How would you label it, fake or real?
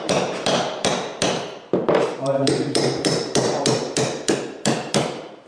fake